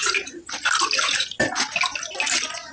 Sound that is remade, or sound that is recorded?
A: recorded